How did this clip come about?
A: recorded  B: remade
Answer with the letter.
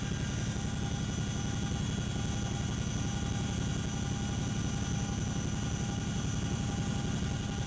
A